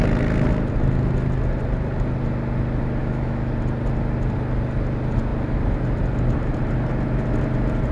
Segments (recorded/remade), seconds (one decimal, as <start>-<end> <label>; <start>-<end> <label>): 0.0-3.0 recorded; 3.0-3.5 remade; 3.5-7.9 recorded